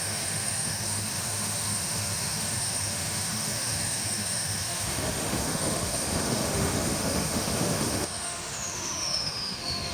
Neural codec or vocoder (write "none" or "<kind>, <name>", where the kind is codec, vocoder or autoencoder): autoencoder, DAC-VAE